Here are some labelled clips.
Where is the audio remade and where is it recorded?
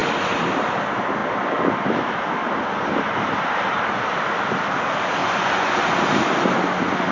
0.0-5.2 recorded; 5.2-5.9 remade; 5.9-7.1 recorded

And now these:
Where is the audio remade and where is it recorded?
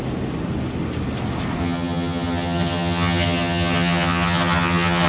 0.0-1.6 recorded; 1.6-5.1 remade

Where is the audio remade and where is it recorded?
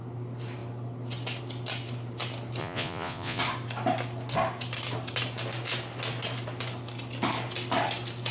0.0-2.6 recorded; 2.6-3.4 remade; 3.4-8.3 recorded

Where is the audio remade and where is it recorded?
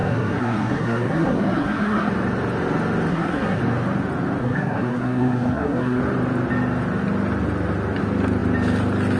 0.0-2.1 remade; 2.1-3.1 recorded; 3.1-3.6 remade; 3.6-4.4 recorded; 4.4-6.0 remade; 6.0-9.2 recorded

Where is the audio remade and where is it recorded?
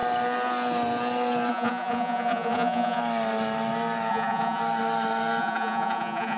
0.0-1.5 recorded; 1.5-3.0 remade; 3.0-4.1 recorded; 4.1-4.6 remade; 4.6-5.4 recorded; 5.4-6.4 remade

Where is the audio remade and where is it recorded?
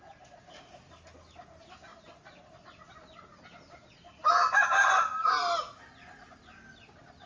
0.0-7.3 recorded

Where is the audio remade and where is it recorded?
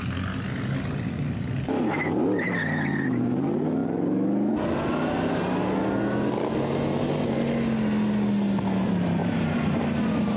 0.0-9.2 recorded; 9.2-9.8 remade; 9.8-10.4 recorded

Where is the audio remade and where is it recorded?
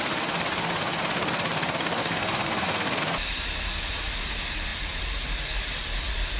0.0-2.0 recorded; 2.0-3.0 remade; 3.0-6.4 recorded